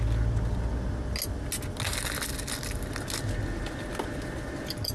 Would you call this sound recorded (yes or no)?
yes